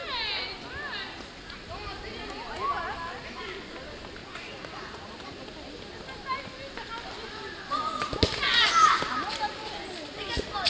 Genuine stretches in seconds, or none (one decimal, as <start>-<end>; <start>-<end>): 0.0-4.2; 5.0-10.7